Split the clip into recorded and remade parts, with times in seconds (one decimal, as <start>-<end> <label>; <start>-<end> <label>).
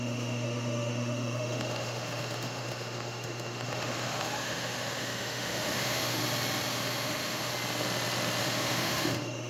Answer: 0.0-6.2 remade; 6.2-6.7 recorded; 6.7-7.5 remade; 7.5-8.4 recorded; 8.4-9.5 remade